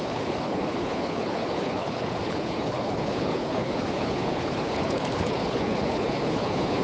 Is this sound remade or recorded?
remade